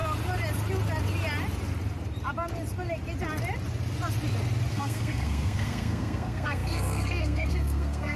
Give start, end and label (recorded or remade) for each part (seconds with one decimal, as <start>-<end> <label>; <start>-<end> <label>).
0.0-4.7 recorded; 4.7-8.2 remade